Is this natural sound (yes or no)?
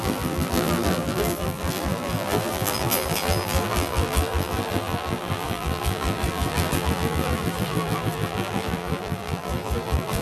no